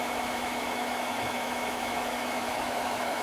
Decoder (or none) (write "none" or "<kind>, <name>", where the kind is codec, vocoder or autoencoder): autoencoder, DAC-VAE